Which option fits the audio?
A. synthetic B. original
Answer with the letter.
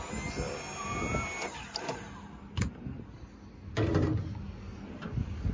B